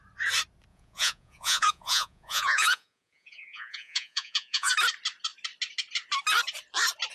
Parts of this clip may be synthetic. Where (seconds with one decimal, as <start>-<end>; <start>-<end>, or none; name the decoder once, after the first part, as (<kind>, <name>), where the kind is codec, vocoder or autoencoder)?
0.7-4.7 (vocoder, Vocos)